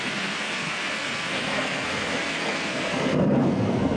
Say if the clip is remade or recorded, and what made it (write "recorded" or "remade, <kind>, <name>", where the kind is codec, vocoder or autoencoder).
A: remade, codec, SNAC